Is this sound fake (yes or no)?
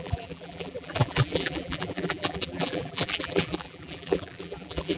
yes